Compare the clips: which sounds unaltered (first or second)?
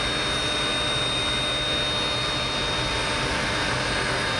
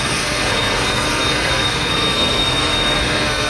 first